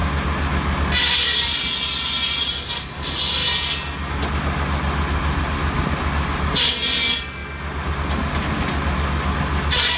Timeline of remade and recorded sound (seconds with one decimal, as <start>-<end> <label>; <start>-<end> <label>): 0.0-10.0 recorded